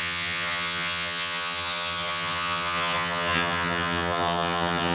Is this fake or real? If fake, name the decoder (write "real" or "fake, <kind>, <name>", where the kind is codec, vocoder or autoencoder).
fake, vocoder, HiFi-GAN